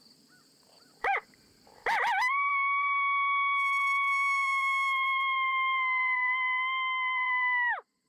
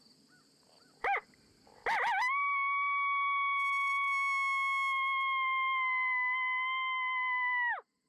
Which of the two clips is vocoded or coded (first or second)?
first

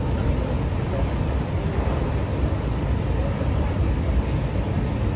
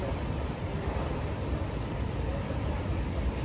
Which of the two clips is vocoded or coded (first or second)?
second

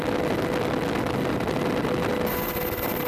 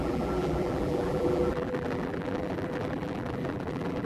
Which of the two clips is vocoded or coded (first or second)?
second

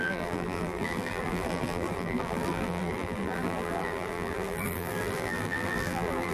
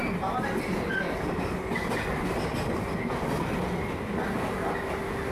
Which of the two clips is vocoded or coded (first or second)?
first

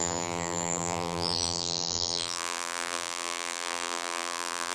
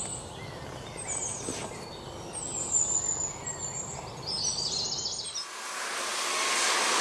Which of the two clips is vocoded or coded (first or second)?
first